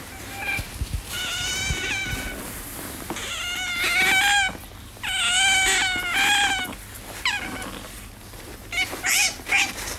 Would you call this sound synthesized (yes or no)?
no